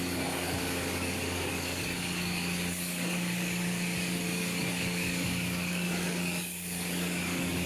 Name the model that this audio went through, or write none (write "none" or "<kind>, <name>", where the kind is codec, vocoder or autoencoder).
codec, DAC